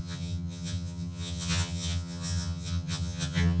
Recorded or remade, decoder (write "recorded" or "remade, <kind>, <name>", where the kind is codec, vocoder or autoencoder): remade, vocoder, HiFi-GAN